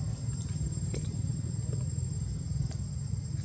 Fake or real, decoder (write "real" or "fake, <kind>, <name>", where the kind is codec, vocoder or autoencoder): real